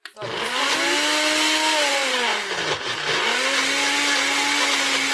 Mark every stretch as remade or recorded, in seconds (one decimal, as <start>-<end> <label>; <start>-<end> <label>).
0.0-5.1 recorded

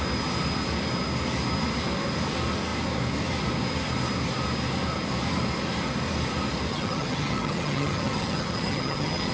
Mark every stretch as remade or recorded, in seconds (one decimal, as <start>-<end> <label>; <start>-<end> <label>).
0.0-6.7 recorded; 6.7-9.3 remade

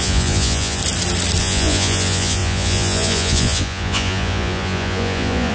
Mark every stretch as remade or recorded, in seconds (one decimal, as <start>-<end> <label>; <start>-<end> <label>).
0.0-0.8 remade; 0.8-1.4 recorded; 1.4-5.5 remade